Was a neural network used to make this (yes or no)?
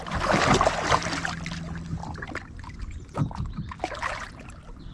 no